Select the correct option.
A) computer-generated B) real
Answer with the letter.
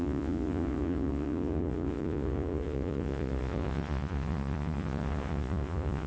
A